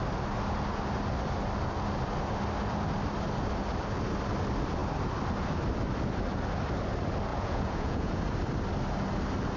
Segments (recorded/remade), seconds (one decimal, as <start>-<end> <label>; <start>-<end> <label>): 0.0-7.3 recorded; 7.3-8.2 remade; 8.2-9.6 recorded